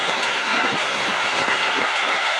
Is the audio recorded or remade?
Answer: remade